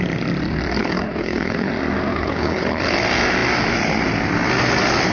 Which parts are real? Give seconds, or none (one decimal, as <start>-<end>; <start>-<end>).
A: 0.0-0.8; 1.7-2.1; 2.8-5.1